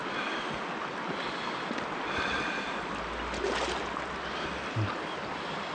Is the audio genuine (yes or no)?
yes